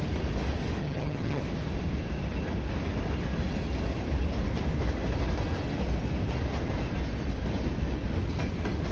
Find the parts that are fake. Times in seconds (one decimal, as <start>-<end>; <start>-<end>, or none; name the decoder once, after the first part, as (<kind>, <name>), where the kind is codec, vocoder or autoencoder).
0.8-1.4 (vocoder, HiFi-GAN)